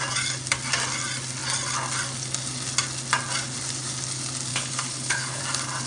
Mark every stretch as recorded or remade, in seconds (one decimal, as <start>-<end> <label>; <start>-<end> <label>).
0.0-4.5 recorded; 4.5-5.4 remade; 5.4-5.9 recorded